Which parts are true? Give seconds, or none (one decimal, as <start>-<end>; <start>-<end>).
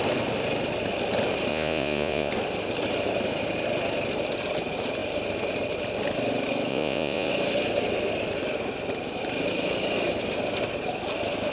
0.0-1.5; 2.3-6.7; 7.3-11.5